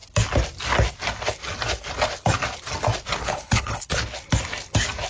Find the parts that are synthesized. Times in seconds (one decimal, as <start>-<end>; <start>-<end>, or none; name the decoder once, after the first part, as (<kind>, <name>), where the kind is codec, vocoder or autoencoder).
3.2-3.9 (codec, HILCodec)